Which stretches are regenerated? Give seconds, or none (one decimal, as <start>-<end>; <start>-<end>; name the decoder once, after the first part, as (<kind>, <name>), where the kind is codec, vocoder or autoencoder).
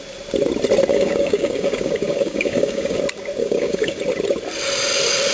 0.9-3.0 (codec, DAC); 3.4-4.0